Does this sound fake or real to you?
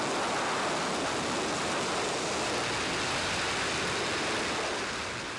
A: real